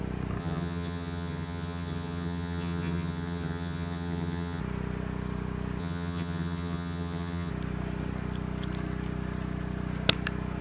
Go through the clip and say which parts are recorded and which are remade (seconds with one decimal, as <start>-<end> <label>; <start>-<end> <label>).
0.0-0.4 recorded; 0.4-4.6 remade; 4.6-5.8 recorded; 5.8-7.5 remade; 7.5-10.6 recorded